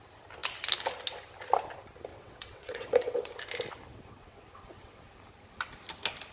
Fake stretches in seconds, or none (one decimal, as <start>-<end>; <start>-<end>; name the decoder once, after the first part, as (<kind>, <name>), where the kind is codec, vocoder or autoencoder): 2.1-3.3 (vocoder, WaveNeXt); 3.9-5.1